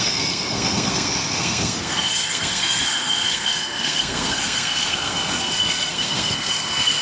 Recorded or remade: remade